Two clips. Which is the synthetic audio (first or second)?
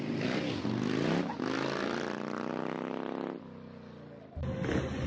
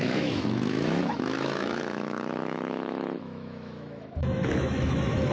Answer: second